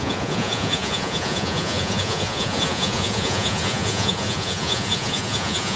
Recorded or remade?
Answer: remade